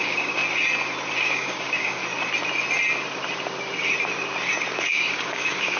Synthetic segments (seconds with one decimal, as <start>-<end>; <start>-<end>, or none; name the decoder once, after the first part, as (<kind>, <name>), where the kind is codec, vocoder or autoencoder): 0.0-0.4 (codec, DAC); 1.2-2.0; 4.8-5.8